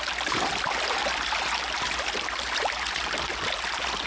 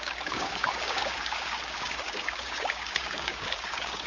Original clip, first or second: first